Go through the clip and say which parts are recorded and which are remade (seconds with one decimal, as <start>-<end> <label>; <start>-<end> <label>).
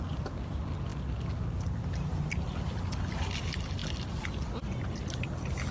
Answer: 0.0-5.7 recorded